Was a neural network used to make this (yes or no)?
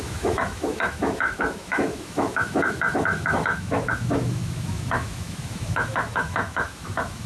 yes